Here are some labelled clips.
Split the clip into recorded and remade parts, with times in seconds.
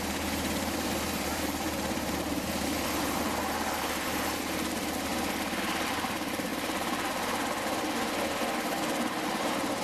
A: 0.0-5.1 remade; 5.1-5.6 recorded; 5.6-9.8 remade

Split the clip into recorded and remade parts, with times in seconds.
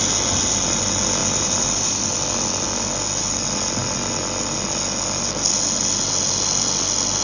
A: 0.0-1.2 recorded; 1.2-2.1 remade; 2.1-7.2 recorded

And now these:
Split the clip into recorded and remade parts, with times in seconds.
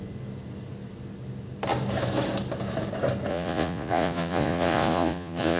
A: 0.0-3.3 recorded; 3.3-5.6 remade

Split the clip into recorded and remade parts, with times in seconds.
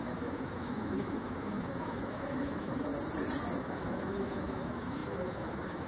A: 0.0-2.9 remade; 2.9-3.6 recorded; 3.6-5.9 remade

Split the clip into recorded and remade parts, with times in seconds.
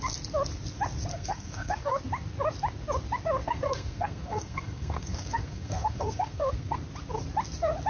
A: 0.0-1.1 recorded; 1.1-2.0 remade; 2.0-3.4 recorded; 3.4-6.8 remade; 6.8-7.9 recorded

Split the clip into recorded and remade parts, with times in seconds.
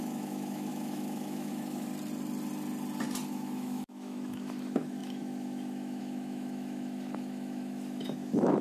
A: 0.0-1.9 remade; 1.9-3.3 recorded; 3.3-8.6 remade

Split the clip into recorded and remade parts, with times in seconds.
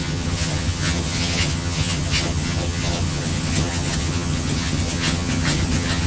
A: 0.0-6.1 remade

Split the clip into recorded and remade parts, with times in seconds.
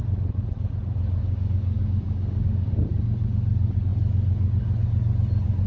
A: 0.0-1.2 recorded; 1.2-2.7 remade; 2.7-5.7 recorded